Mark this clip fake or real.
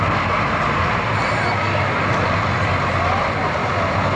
real